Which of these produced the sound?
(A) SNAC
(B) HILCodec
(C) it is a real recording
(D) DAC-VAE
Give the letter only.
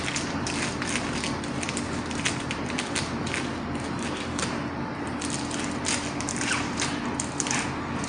C